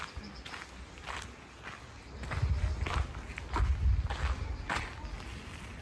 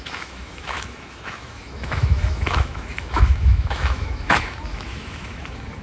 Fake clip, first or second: second